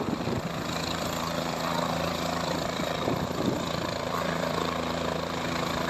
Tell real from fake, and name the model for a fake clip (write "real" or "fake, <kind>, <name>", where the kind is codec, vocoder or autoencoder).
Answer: fake, vocoder, BigVGAN v2